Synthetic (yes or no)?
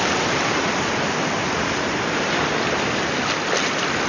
no